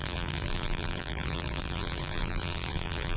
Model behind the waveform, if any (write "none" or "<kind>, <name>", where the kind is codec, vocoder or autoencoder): vocoder, BigVGAN v2